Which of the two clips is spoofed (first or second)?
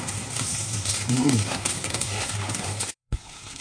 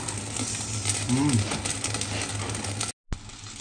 first